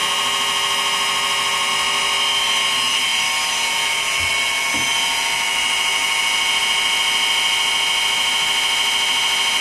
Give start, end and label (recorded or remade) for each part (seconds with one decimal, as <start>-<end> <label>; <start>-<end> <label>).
0.0-9.6 recorded